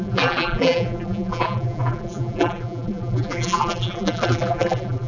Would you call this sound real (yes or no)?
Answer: no